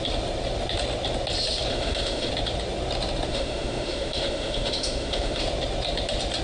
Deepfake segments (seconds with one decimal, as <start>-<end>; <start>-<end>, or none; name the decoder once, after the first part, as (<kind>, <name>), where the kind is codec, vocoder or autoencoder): 1.7-2.3 (autoencoder, DAC-VAE); 3.3-5.4